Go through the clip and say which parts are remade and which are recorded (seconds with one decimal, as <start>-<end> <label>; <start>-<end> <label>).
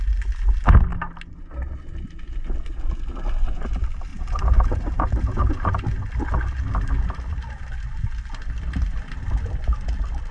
0.0-4.1 recorded; 4.1-5.5 remade; 5.5-10.3 recorded